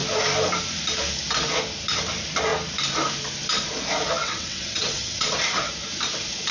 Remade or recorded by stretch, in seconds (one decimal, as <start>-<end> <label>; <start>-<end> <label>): 0.0-4.2 recorded; 4.2-5.3 remade; 5.3-6.5 recorded